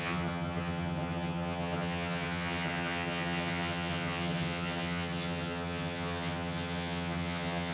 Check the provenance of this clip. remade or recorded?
remade